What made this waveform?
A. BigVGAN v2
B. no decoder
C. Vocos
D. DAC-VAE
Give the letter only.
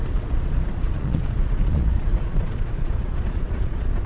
C